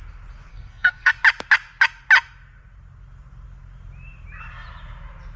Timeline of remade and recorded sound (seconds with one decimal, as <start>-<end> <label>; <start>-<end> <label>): 0.0-0.5 recorded; 0.5-1.1 remade; 1.1-5.4 recorded